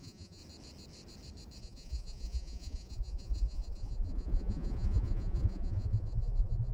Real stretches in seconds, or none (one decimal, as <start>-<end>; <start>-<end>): 0.4-1.6

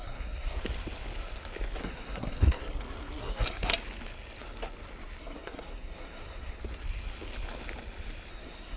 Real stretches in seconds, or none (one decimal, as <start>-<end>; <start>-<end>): 0.6-1.8; 2.6-3.2; 3.7-5.2; 6.6-8.3